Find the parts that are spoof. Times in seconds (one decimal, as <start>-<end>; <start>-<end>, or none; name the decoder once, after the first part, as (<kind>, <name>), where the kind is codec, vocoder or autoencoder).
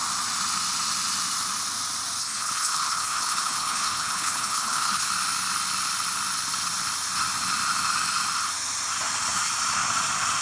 2.2-5.1 (codec, HILCodec)